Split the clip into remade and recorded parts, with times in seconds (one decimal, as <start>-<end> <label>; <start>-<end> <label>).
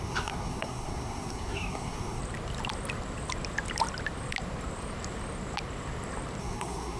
0.0-2.2 remade; 2.2-6.4 recorded; 6.4-7.0 remade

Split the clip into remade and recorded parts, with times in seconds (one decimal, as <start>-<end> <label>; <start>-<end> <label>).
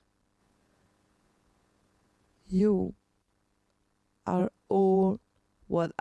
0.0-0.4 recorded; 0.4-2.6 remade; 2.6-4.4 recorded; 4.4-5.1 remade; 5.1-6.0 recorded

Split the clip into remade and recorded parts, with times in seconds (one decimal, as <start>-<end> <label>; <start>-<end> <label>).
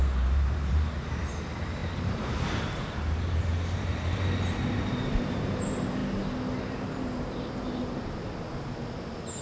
0.0-6.0 remade; 6.0-9.0 recorded; 9.0-9.4 remade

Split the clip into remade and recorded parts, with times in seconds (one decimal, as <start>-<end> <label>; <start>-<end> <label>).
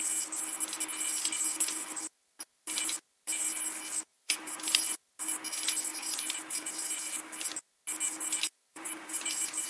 0.0-4.1 recorded; 4.1-4.9 remade; 4.9-5.9 recorded; 5.9-7.1 remade; 7.1-8.7 recorded; 8.7-9.7 remade